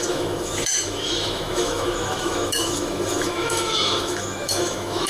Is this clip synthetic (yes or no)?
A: yes